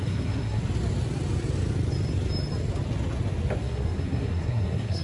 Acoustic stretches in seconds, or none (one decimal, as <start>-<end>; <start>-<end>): 0.6-3.6